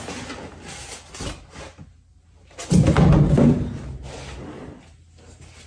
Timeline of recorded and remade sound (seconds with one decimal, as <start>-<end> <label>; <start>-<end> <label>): 0.0-5.7 recorded